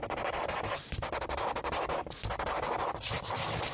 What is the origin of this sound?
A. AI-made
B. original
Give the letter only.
B